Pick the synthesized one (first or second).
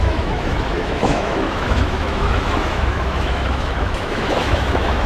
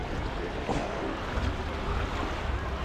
first